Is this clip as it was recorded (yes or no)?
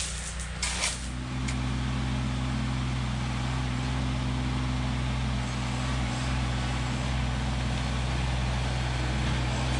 yes